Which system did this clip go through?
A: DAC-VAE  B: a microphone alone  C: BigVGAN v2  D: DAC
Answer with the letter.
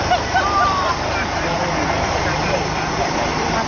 B